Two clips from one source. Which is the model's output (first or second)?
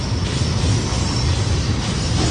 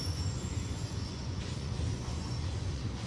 second